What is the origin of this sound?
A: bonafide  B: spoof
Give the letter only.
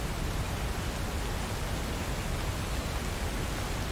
A